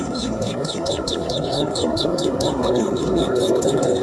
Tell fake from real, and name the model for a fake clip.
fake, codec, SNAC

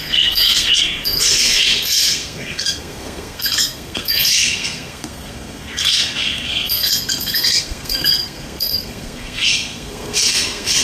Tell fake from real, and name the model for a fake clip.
fake, codec, SNAC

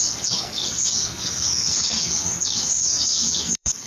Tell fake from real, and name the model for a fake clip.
fake, codec, SNAC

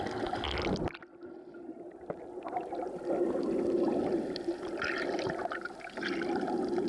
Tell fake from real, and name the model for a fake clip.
real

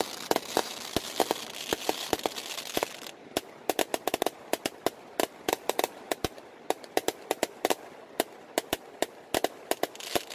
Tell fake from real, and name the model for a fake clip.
real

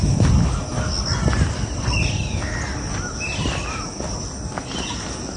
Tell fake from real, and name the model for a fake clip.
real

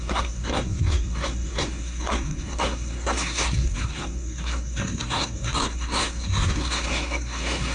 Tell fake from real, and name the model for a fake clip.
fake, codec, SNAC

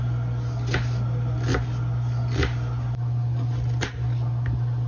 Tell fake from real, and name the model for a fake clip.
real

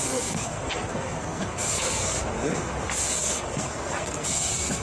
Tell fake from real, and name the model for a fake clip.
fake, codec, SNAC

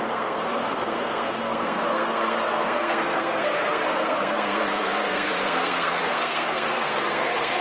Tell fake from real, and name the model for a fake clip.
fake, codec, SNAC